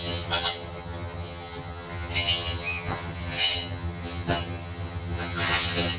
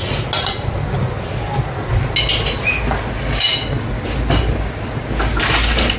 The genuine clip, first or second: second